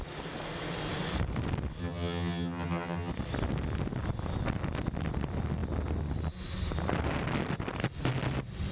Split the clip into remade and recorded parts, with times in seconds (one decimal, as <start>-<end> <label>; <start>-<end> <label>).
0.0-1.8 recorded; 1.8-3.1 remade; 3.1-8.7 recorded